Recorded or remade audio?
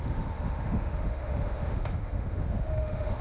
remade